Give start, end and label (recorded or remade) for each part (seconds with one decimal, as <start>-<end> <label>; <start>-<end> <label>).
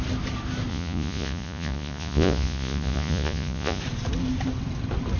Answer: 0.0-0.7 recorded; 0.7-3.8 remade; 3.8-5.2 recorded